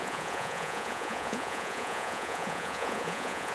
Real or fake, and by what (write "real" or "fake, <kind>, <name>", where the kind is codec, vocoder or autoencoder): fake, vocoder, Vocos